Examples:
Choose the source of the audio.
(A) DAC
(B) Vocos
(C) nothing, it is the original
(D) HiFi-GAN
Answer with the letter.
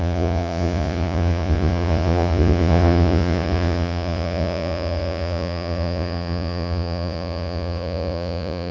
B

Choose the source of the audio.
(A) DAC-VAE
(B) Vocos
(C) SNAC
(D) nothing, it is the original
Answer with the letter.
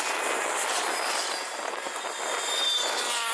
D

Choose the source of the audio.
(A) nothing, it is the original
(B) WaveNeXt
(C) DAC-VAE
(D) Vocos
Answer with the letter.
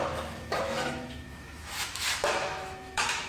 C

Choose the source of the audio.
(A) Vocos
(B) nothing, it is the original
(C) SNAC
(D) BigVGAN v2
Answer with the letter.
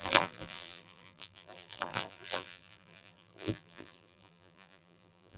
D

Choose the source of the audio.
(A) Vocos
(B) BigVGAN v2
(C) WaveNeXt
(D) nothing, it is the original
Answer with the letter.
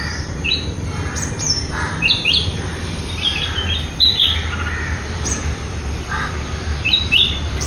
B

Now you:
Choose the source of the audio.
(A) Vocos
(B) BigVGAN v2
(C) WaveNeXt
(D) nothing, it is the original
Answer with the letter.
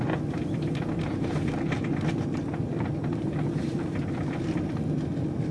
D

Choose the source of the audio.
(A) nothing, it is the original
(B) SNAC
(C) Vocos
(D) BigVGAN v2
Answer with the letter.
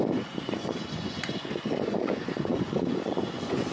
C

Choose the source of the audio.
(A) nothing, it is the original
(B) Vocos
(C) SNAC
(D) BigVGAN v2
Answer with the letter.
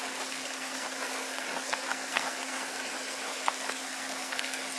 C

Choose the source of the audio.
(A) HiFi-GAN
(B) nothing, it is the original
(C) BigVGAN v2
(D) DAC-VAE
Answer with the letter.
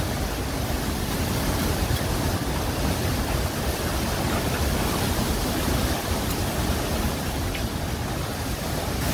B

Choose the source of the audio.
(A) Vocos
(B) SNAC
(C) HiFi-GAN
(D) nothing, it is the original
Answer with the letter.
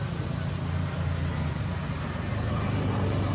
D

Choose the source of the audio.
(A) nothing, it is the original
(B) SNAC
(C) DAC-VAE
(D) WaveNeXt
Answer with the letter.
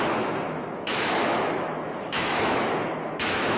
C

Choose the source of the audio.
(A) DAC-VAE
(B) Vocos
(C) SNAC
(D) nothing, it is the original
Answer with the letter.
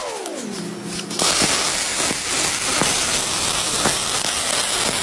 D